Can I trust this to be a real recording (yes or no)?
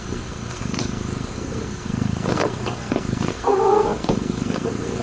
no